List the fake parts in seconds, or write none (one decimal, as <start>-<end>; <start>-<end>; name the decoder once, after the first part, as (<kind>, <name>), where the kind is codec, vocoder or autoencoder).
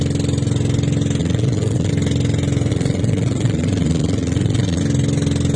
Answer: 1.2-1.9 (vocoder, Vocos); 2.7-4.8